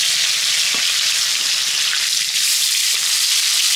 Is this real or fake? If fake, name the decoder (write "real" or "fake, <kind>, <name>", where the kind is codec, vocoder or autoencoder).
real